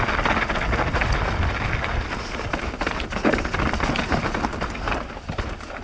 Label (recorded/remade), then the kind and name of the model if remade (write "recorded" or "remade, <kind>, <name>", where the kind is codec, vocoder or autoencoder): recorded